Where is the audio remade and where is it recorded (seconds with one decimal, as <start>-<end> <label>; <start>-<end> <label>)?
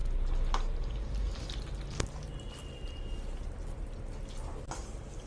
0.0-5.3 recorded